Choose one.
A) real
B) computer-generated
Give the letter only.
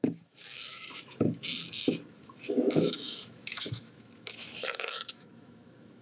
B